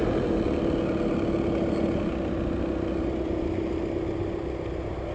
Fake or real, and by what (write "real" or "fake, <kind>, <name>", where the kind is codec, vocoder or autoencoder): real